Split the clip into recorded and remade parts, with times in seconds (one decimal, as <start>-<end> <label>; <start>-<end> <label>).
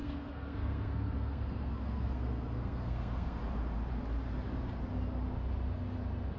0.0-3.4 remade; 3.4-6.4 recorded